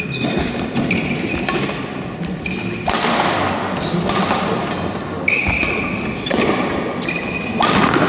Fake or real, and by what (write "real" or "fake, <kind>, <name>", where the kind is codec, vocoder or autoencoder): real